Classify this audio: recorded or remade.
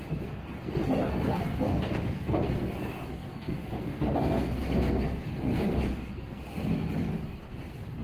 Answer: remade